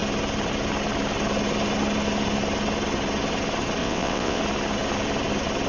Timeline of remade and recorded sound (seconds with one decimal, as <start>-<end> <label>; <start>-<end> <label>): 0.0-3.8 recorded; 3.8-4.4 remade; 4.4-5.7 recorded